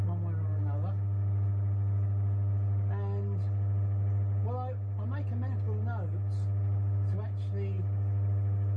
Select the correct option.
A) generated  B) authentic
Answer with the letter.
B